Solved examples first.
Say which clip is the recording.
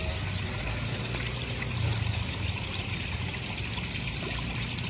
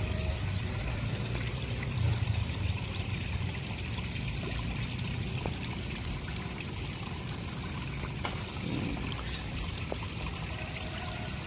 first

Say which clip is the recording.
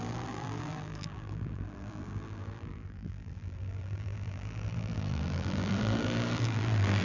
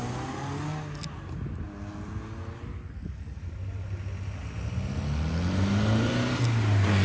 second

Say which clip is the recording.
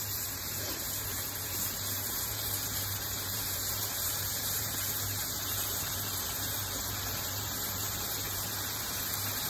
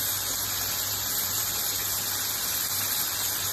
second